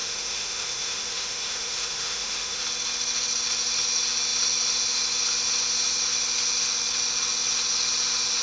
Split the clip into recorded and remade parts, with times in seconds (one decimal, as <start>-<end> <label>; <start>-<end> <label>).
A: 0.0-2.6 remade; 2.6-8.4 recorded